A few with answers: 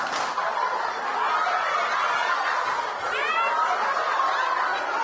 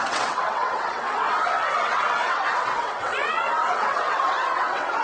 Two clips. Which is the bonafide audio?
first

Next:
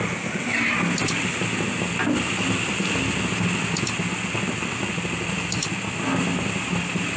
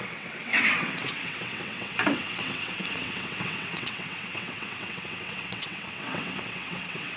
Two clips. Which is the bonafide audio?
first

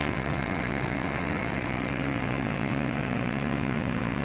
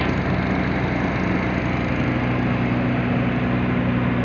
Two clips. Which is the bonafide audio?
second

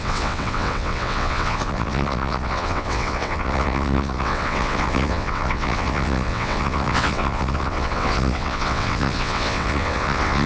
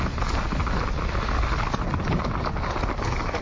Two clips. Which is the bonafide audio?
second